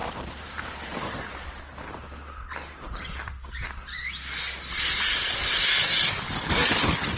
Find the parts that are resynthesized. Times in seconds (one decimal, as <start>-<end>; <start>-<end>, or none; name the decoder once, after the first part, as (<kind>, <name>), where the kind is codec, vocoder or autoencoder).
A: 0.0-1.6 (vocoder, BigVGAN v2)